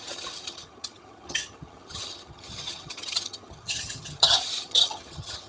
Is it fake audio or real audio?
fake